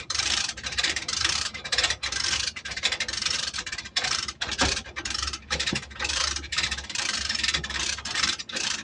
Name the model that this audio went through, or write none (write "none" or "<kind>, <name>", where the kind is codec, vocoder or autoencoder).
vocoder, BigVGAN v2